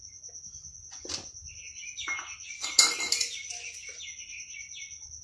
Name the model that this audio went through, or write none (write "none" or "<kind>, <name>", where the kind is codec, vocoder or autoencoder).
none